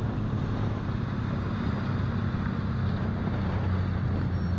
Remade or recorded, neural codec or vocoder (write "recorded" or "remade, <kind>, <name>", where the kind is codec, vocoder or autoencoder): recorded